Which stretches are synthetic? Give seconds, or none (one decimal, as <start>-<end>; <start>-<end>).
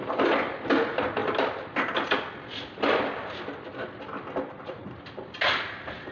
none